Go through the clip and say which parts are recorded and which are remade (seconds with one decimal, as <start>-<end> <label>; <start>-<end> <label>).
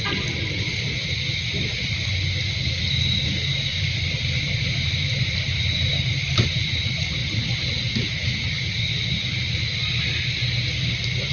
0.0-3.7 recorded; 3.7-6.8 remade; 6.8-7.2 recorded; 7.2-7.7 remade; 7.7-11.3 recorded